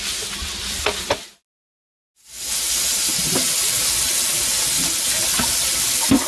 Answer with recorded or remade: recorded